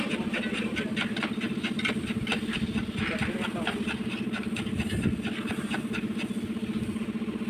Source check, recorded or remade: recorded